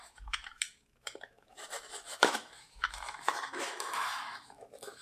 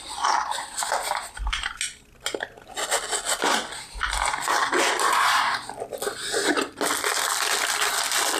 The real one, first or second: second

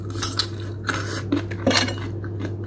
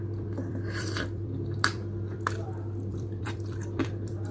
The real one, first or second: first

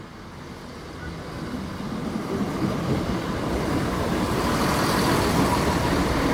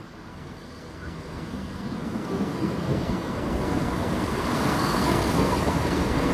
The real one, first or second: first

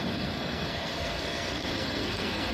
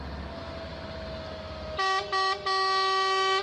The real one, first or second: second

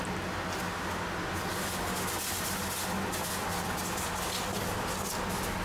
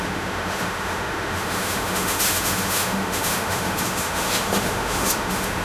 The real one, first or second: first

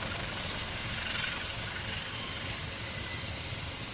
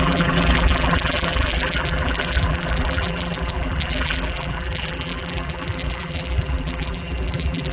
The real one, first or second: first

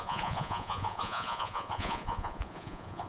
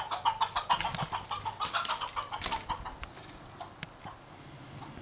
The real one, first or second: second